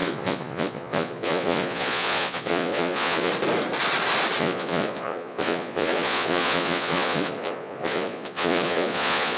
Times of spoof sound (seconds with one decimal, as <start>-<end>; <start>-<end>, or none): 0.0-3.3; 4.4-9.4